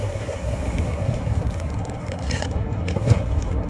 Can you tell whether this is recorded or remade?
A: remade